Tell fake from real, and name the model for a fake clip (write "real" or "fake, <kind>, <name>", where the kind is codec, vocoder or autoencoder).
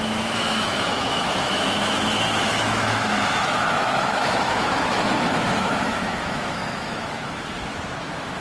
fake, autoencoder, DAC-VAE